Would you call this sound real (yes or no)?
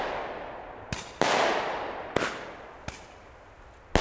yes